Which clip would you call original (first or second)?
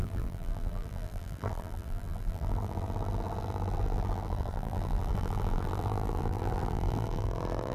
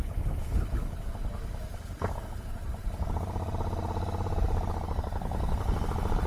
second